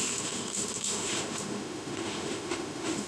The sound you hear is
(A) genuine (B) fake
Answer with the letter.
B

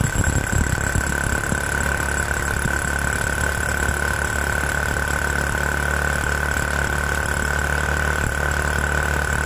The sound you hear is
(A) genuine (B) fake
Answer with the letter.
A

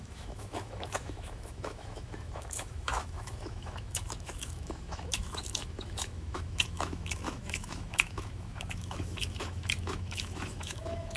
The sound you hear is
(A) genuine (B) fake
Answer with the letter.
B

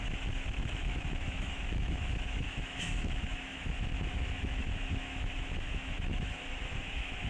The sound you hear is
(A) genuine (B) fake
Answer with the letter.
B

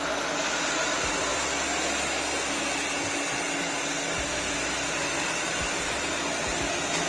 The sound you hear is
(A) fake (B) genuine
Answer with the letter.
B